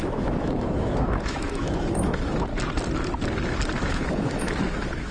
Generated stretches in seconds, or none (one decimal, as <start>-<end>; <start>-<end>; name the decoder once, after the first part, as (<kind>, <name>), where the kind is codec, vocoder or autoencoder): 0.0-2.5 (autoencoder, DAC-VAE); 3.9-5.1